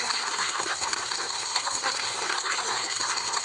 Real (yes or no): no